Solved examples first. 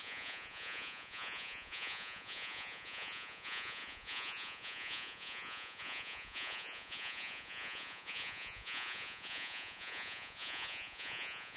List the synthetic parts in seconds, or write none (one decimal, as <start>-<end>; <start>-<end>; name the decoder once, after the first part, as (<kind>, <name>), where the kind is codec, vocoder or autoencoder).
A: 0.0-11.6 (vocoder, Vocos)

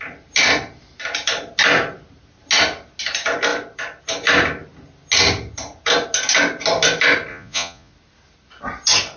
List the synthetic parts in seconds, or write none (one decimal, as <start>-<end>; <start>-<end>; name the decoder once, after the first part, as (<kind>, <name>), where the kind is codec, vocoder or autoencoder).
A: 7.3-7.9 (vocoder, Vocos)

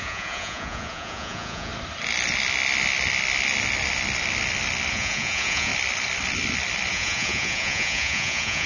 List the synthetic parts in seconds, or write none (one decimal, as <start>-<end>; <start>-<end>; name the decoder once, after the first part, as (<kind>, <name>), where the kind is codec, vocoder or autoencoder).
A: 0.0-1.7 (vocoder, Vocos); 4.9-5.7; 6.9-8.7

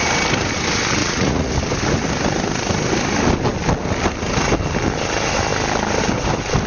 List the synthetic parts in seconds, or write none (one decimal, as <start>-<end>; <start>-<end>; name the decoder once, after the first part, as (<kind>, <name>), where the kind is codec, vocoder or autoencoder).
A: 1.0-1.5 (vocoder, Vocos)

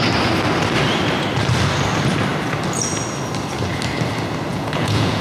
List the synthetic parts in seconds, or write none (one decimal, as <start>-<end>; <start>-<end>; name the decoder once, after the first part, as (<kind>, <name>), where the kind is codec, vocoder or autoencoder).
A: 4.5-5.2 (vocoder, Vocos)

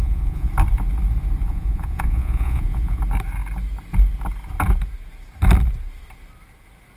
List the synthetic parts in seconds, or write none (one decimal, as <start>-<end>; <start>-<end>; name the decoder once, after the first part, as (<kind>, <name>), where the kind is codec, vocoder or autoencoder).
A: 0.0-0.5 (vocoder, Vocos); 1.4-3.0